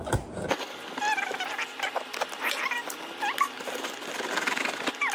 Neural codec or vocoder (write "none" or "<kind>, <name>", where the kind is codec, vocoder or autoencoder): none